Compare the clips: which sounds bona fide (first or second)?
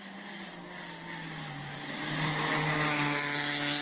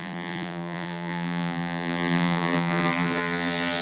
first